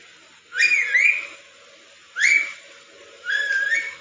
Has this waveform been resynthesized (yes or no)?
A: no